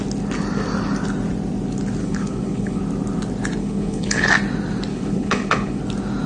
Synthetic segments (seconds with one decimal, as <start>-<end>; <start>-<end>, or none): 2.0-2.8; 3.6-4.3; 4.9-5.8